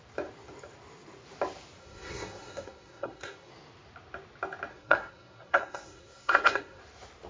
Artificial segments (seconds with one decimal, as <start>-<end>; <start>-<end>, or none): 1.8-3.5; 4.7-6.8